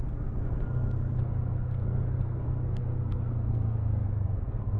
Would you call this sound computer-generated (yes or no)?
yes